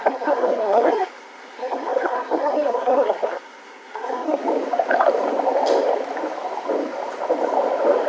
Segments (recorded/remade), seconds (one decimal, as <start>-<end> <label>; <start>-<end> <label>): 0.0-4.4 remade; 4.4-8.1 recorded